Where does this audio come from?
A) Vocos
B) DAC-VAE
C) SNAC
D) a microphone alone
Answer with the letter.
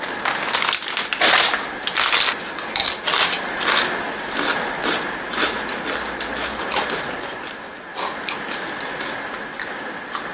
D